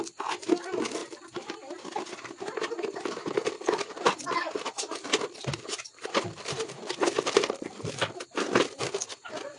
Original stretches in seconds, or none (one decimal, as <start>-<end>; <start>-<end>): 0.0-1.0; 1.5-3.4; 8.2-9.6